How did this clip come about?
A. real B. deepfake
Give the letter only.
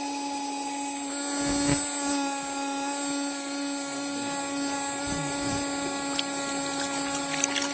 A